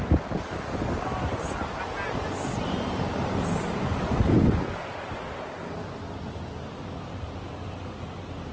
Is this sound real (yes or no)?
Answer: yes